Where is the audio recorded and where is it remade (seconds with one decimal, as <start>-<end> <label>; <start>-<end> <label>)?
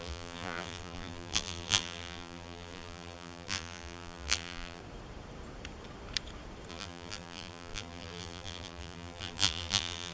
0.0-4.8 remade; 4.8-6.7 recorded; 6.7-10.1 remade